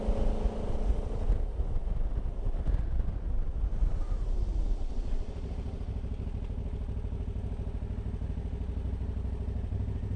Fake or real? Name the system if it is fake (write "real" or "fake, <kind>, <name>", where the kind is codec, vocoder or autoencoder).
real